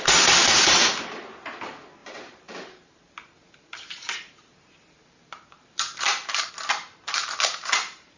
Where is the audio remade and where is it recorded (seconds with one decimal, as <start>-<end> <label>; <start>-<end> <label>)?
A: 0.0-0.4 recorded; 0.4-0.9 remade; 0.9-2.0 recorded; 2.0-6.5 remade; 6.5-7.1 recorded; 7.1-8.2 remade